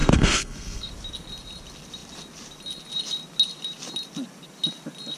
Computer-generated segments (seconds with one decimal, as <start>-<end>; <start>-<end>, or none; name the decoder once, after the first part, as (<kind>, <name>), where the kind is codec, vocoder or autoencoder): 0.0-0.9 (codec, SNAC)